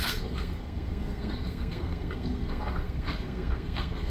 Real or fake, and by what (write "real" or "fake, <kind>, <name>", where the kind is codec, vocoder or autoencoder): fake, codec, SNAC